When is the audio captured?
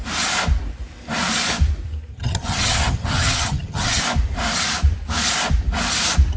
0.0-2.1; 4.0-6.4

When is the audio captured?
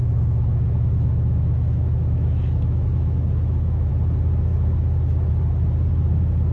3.9-6.5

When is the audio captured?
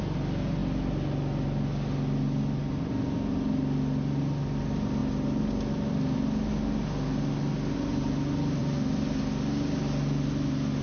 0.0-10.8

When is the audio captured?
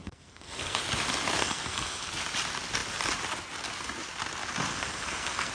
0.8-1.4; 2.1-4.7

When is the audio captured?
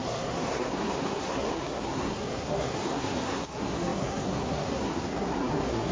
none